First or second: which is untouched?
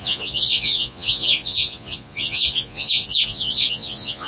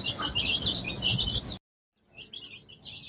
second